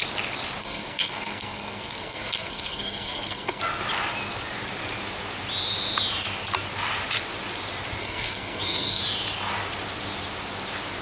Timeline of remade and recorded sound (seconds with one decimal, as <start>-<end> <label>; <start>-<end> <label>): 0.0-0.6 recorded; 0.6-3.6 remade; 3.6-8.0 recorded; 8.0-9.0 remade; 9.0-11.0 recorded